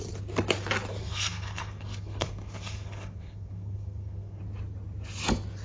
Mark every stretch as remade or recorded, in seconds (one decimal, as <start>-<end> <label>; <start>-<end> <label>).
0.0-1.0 recorded; 1.0-4.4 remade; 4.4-5.6 recorded